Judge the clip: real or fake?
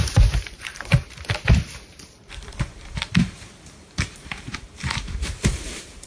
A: fake